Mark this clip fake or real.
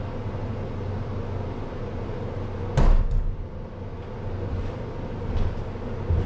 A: real